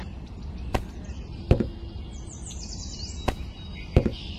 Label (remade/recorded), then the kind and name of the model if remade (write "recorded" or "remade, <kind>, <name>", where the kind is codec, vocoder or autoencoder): recorded